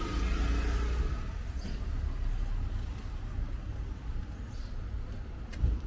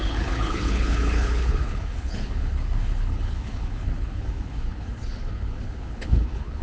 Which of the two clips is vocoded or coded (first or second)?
second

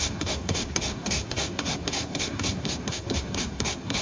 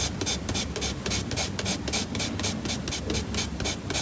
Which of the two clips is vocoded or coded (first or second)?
first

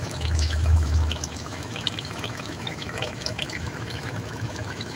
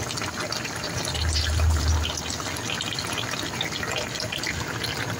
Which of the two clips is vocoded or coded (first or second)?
first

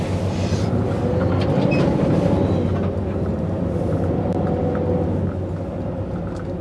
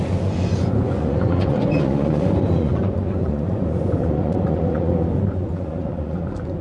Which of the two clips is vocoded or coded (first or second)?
second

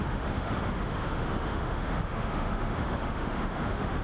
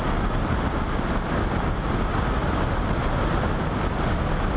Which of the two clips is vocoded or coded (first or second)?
first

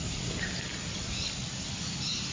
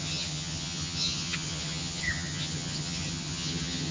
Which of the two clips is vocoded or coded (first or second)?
second